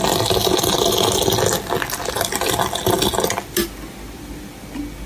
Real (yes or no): yes